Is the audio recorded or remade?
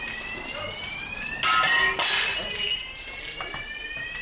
recorded